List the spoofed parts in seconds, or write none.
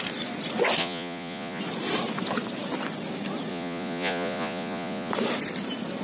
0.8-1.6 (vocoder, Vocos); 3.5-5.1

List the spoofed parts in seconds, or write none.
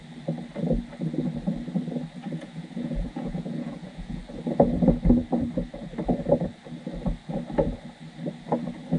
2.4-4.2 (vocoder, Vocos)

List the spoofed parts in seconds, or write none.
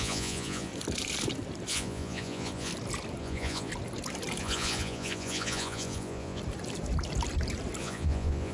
0.0-0.7 (vocoder, Vocos); 1.7-2.7; 3.2-3.7; 4.4-6.4; 7.8-8.5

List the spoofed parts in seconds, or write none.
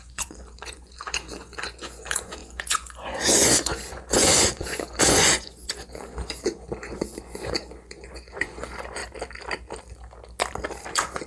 0.0-9.0 (vocoder, Vocos); 10.9-11.3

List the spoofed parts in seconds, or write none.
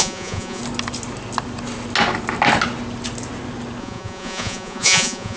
0.0-0.6 (vocoder, Vocos); 3.8-5.4